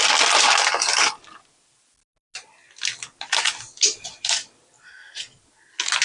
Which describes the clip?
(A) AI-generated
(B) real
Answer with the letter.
B